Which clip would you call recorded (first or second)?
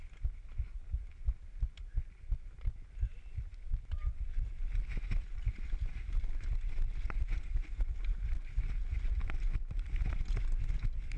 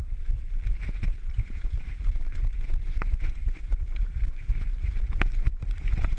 first